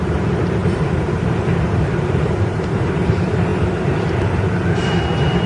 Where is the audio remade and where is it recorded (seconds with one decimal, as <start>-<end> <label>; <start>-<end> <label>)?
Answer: 0.0-5.5 remade